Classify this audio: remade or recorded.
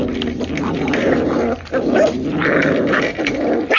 remade